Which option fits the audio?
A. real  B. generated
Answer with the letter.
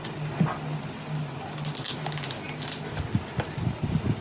A